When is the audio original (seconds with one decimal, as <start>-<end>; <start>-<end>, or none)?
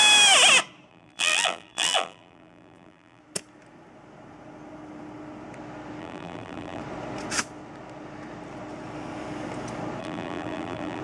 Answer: 0.0-0.9; 3.2-6.0; 6.8-10.0